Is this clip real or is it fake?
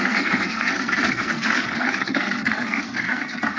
fake